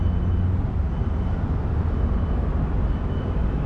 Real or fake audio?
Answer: real